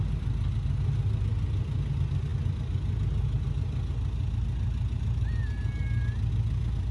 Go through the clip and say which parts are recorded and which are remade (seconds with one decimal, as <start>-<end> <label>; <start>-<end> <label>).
0.0-6.9 recorded